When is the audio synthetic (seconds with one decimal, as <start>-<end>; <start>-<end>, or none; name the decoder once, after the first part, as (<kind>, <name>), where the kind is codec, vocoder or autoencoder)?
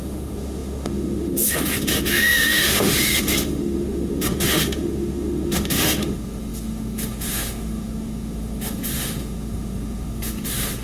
0.0-10.8 (autoencoder, DAC-VAE)